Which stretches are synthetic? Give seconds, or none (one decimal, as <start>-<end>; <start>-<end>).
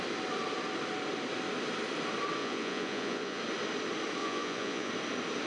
2.4-3.4; 4.2-4.9